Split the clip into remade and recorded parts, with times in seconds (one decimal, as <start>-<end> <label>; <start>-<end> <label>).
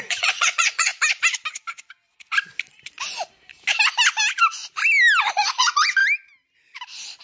0.0-0.9 remade; 0.9-5.2 recorded; 5.2-6.0 remade; 6.0-7.2 recorded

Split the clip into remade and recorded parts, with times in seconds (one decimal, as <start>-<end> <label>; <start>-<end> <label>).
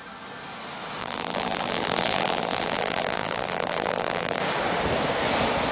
0.0-1.0 recorded; 1.0-4.4 remade; 4.4-5.7 recorded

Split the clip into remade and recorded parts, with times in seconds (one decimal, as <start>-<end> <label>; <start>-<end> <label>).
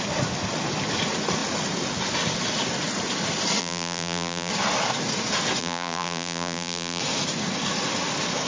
0.0-3.6 recorded; 3.6-4.5 remade; 4.5-5.6 recorded; 5.6-7.0 remade; 7.0-8.5 recorded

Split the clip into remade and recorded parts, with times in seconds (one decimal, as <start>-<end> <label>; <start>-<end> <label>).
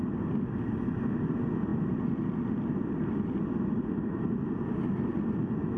0.0-5.8 recorded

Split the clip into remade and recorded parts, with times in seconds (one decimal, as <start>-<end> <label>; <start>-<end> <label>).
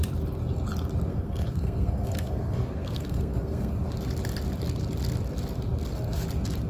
0.0-1.1 recorded; 1.1-3.7 remade; 3.7-6.7 recorded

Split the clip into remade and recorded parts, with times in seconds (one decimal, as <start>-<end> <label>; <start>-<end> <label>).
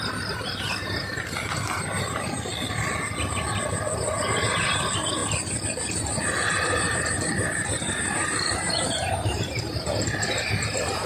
0.0-2.5 remade; 2.5-4.2 recorded; 4.2-5.2 remade; 5.2-6.5 recorded; 6.5-11.1 remade